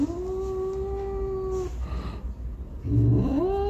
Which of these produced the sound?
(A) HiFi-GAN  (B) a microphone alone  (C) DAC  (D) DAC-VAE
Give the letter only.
B